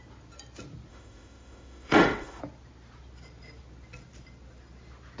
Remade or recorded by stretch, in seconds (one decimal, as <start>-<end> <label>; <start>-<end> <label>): 0.0-0.9 recorded; 0.9-2.4 remade; 2.4-5.2 recorded